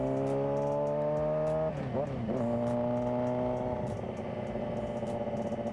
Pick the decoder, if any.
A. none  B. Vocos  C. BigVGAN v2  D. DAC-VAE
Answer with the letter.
A